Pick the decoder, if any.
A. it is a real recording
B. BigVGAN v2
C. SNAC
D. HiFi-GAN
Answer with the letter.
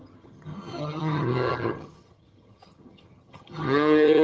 D